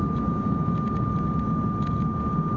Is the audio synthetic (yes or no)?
no